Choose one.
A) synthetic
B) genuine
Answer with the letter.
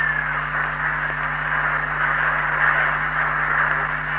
B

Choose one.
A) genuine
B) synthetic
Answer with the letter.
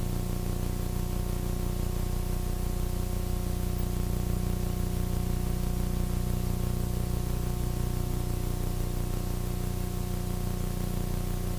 A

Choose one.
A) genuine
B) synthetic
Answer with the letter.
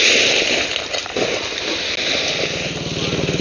A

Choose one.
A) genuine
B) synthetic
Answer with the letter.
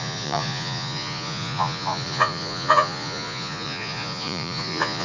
B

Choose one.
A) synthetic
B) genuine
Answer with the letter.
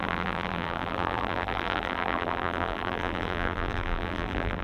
A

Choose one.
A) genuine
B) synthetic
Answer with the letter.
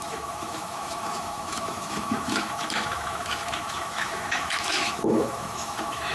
B